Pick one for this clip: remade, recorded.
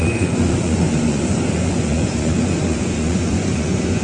remade